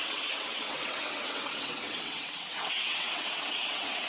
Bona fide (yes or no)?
no